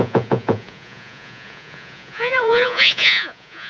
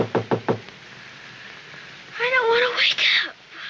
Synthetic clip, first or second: first